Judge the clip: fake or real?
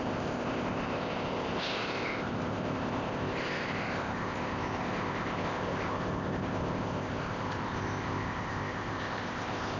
fake